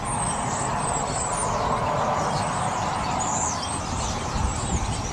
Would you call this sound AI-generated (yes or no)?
no